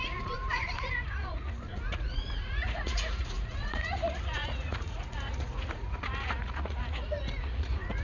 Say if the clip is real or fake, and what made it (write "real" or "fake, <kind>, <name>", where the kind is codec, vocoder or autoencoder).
fake, vocoder, Vocos